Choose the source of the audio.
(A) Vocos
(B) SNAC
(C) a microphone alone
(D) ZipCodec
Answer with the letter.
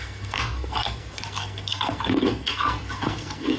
B